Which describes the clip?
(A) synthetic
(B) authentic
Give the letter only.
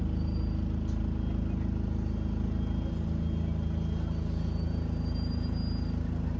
B